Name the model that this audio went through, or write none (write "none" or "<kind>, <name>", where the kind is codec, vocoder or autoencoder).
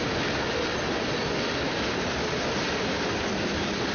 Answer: none